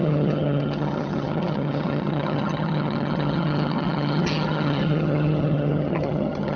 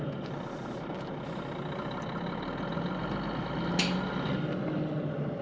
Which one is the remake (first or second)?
first